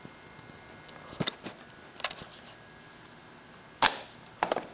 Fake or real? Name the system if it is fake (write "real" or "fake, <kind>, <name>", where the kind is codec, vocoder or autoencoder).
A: real